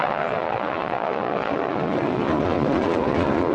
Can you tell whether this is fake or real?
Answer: fake